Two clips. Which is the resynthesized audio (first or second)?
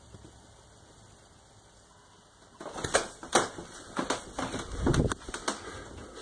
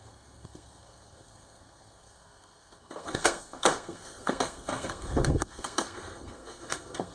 second